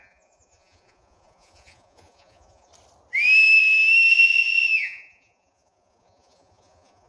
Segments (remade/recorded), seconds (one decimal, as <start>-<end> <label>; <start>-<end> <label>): 0.0-2.7 remade; 2.7-4.1 recorded; 4.1-7.1 remade